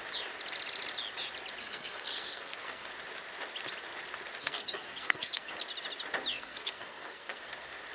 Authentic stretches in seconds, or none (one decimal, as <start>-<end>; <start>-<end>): 0.0-1.6; 2.9-4.4; 5.5-6.3; 7.5-7.9